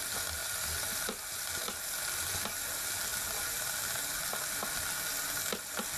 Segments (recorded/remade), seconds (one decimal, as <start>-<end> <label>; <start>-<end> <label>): 0.0-6.0 recorded